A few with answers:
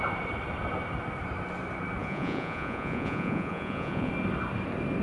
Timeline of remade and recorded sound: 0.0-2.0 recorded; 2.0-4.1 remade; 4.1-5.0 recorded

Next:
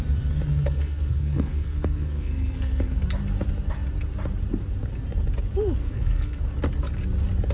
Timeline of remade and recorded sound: 0.0-0.5 recorded; 0.5-3.0 remade; 3.0-5.8 recorded; 5.8-6.4 remade; 6.4-7.5 recorded

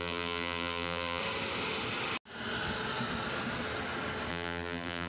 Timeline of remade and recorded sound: 0.0-1.2 remade; 1.2-4.3 recorded; 4.3-5.1 remade

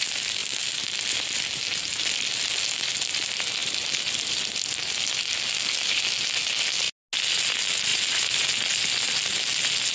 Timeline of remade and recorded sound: 0.0-0.4 recorded; 0.4-1.4 remade; 1.4-7.9 recorded; 7.9-8.5 remade; 8.5-9.9 recorded